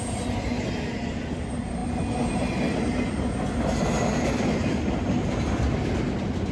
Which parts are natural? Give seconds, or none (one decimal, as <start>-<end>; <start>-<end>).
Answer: 0.0-6.5